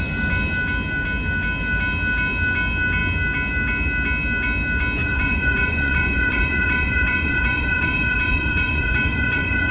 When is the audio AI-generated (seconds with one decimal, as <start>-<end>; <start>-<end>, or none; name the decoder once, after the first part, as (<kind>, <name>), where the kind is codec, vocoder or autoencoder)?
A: 5.0-9.7 (vocoder, Vocos)